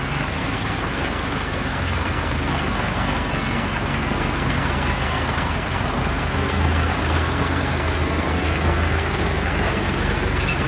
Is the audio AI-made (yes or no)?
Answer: yes